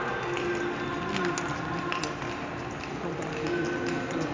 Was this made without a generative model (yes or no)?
yes